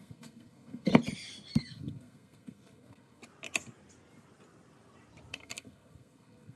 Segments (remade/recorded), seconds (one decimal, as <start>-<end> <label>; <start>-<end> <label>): 0.0-0.9 remade; 0.9-1.6 recorded; 1.6-3.2 remade; 3.2-5.3 recorded; 5.3-6.6 remade